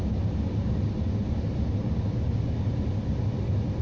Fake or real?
real